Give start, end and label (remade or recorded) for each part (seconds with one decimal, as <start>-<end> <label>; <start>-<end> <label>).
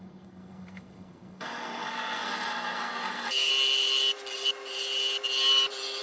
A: 0.0-3.5 remade; 3.5-6.0 recorded